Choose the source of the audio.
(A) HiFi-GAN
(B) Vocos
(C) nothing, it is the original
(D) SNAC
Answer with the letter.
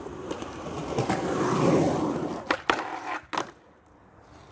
C